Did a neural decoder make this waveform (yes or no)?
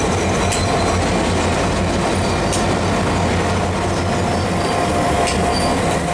no